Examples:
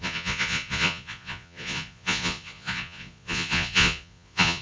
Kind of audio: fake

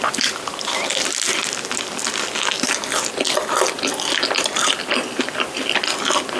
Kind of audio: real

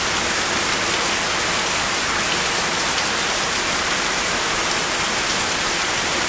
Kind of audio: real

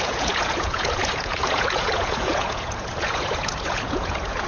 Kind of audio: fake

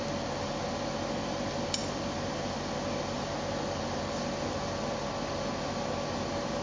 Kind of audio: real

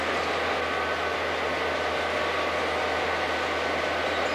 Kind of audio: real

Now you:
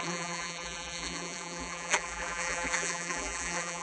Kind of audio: fake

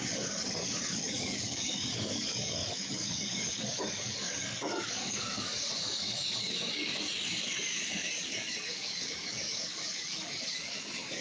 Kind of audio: fake